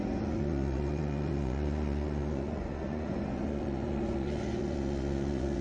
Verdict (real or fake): fake